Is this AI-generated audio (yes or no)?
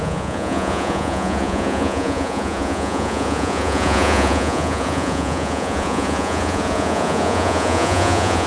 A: yes